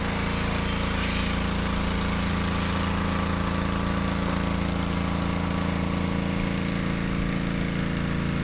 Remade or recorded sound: recorded